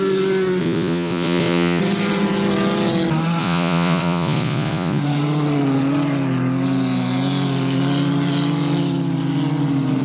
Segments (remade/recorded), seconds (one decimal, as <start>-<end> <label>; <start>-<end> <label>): 0.0-0.6 recorded; 0.6-1.8 remade; 1.8-3.4 recorded; 3.4-5.0 remade; 5.0-10.0 recorded